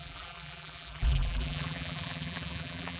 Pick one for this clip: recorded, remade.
remade